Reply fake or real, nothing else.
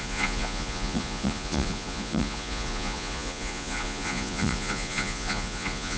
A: fake